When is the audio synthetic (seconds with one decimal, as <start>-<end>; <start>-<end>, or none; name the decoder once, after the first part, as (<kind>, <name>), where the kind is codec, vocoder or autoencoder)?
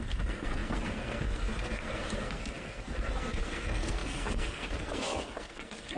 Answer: 0.0-6.0 (codec, SNAC)